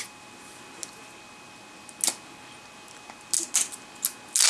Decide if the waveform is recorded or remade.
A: recorded